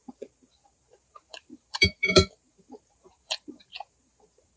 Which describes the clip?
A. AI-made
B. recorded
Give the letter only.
A